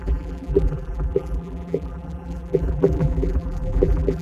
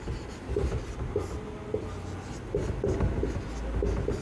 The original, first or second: second